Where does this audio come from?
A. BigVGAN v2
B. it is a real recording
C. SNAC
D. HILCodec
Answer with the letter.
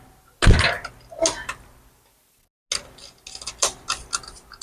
B